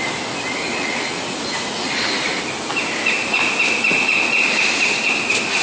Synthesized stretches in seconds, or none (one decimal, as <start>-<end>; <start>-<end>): 0.6-2.4

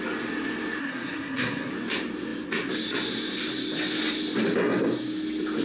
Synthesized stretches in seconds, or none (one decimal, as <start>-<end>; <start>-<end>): 0.8-1.7